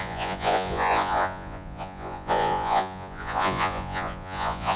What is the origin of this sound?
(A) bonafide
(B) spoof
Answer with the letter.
B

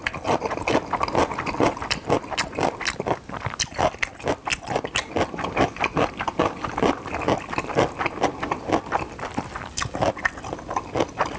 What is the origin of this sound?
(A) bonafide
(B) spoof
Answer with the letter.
A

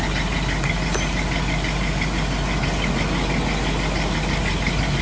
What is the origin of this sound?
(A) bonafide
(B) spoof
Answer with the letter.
A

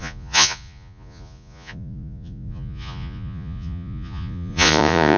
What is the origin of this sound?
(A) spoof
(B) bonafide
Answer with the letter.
A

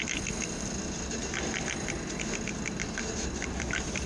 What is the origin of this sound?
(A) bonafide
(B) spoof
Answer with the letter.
A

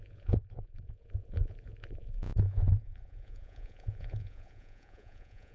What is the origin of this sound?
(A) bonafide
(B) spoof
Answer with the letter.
B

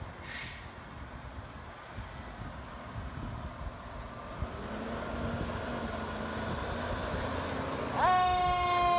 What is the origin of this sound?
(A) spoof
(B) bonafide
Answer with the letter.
B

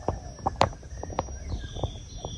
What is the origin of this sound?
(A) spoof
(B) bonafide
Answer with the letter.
B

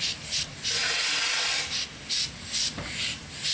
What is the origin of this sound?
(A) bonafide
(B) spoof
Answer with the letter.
A